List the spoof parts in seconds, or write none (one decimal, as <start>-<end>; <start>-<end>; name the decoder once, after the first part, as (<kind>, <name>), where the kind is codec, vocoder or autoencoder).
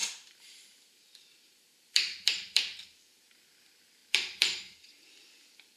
0.0-3.2 (vocoder, BigVGAN v2); 4.0-5.8